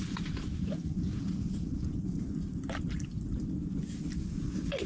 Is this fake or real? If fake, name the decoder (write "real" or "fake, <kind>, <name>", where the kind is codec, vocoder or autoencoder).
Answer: real